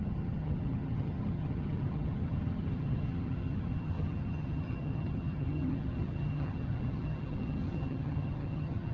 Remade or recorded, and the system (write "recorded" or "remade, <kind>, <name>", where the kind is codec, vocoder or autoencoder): remade, vocoder, HiFi-GAN